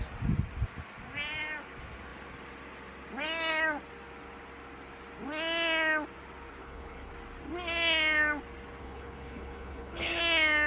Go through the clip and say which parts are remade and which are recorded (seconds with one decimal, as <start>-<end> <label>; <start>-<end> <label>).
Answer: 0.0-6.6 recorded; 6.6-7.1 remade; 7.1-8.8 recorded; 8.8-10.2 remade; 10.2-10.7 recorded